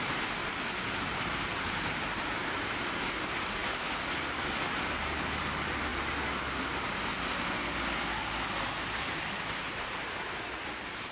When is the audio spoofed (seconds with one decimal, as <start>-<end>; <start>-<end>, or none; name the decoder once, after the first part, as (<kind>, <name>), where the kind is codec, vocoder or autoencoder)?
0.0-5.9 (vocoder, BigVGAN v2); 9.0-11.1